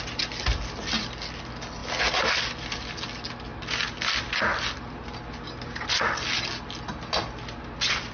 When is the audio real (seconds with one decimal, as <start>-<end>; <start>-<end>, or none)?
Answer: 0.0-8.1